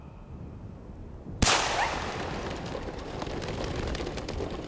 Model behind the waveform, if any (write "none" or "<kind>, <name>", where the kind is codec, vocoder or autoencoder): none